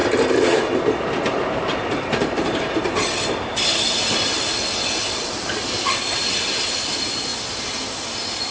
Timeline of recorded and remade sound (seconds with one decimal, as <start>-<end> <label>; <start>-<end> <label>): 0.0-8.5 recorded